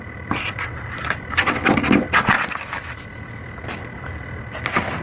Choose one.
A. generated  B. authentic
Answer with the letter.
B